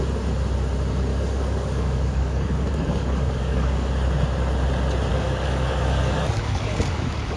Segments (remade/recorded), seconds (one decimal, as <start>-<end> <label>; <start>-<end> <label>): 0.0-1.1 recorded; 1.1-3.9 remade; 3.9-5.1 recorded; 5.1-7.4 remade